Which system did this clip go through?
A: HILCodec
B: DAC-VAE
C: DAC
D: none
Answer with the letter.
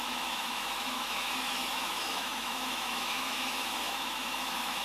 B